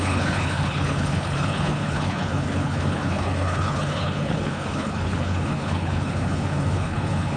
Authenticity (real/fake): fake